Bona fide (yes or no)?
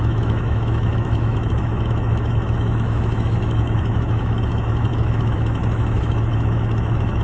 no